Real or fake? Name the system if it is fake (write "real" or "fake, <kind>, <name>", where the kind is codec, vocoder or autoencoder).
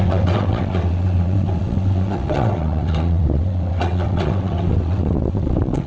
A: fake, vocoder, WaveNeXt